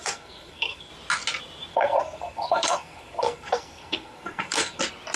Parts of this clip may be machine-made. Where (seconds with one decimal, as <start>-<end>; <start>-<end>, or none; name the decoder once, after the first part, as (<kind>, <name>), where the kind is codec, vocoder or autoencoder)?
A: 0.0-0.9 (codec, SNAC); 1.7-4.8